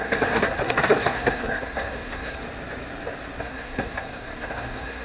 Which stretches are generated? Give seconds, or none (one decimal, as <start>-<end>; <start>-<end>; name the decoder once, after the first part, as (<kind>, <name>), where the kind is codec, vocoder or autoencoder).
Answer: 0.0-2.4 (codec, SNAC); 3.4-5.0